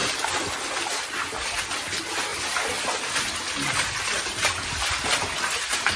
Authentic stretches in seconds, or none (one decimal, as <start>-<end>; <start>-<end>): 0.0-6.0